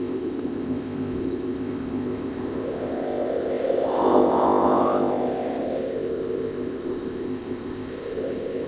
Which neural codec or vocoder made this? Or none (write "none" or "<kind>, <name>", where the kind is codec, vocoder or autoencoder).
codec, ZipCodec